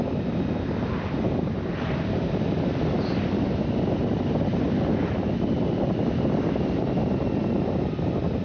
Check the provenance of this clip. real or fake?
real